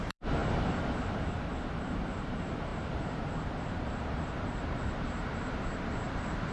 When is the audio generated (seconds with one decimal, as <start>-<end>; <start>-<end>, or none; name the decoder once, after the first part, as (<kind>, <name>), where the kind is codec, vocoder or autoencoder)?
0.0-6.5 (vocoder, BigVGAN v2)

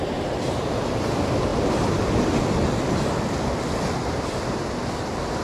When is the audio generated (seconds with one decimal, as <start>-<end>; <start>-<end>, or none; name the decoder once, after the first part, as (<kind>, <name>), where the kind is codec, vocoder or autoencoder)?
none

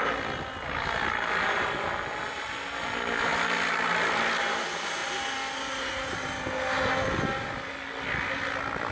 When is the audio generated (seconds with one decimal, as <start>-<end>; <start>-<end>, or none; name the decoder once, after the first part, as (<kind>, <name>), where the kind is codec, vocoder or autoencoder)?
7.3-8.9 (vocoder, BigVGAN v2)

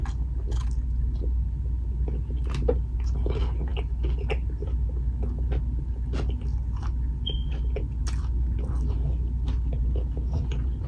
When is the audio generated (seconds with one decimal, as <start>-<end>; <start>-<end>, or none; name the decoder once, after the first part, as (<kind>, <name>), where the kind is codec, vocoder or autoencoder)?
none

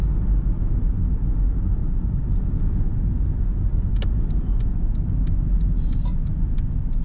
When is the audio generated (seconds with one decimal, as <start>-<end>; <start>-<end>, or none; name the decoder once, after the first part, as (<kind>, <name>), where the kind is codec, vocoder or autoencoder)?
1.8-2.5 (vocoder, BigVGAN v2); 3.3-4.5